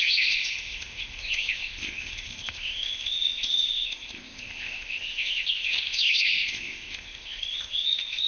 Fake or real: fake